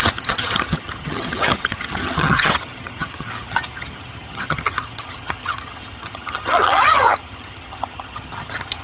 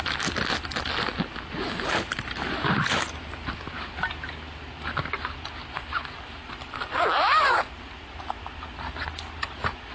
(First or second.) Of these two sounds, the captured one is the second